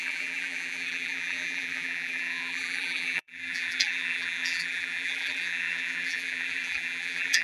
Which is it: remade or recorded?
remade